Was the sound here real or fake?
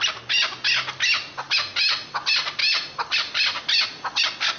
real